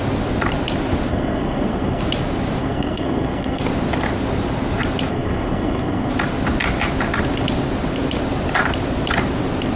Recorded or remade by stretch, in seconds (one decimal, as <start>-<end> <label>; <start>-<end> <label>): 0.0-1.1 recorded; 1.1-2.0 remade; 2.0-2.6 recorded; 2.6-3.6 remade; 3.6-5.1 recorded; 5.1-6.1 remade; 6.1-9.8 recorded